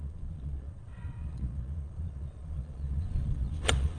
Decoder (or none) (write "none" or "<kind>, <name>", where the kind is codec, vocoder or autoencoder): vocoder, Vocos